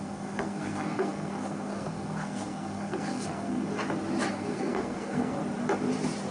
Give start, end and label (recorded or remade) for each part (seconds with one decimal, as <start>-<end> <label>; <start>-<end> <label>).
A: 0.0-3.7 remade; 3.7-4.3 recorded; 4.3-5.4 remade; 5.4-6.3 recorded